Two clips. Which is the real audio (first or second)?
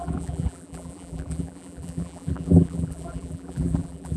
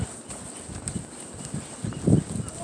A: second